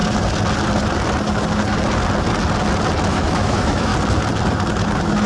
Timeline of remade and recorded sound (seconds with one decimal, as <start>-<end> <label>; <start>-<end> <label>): 0.0-3.1 recorded; 3.1-3.9 remade; 3.9-5.3 recorded